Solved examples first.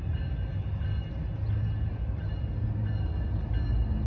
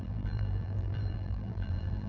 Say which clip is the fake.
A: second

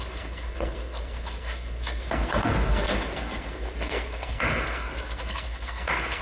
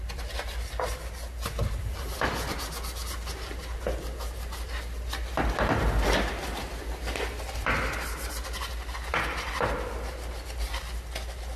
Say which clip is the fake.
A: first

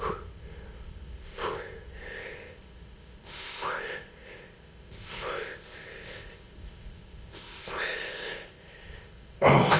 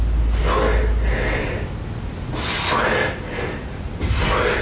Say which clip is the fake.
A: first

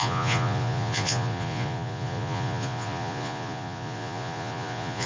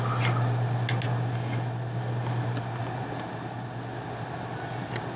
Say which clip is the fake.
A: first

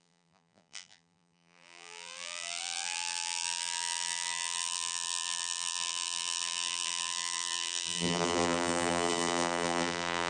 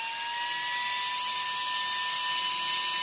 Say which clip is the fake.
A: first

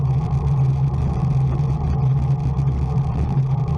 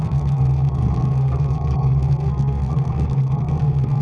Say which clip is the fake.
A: second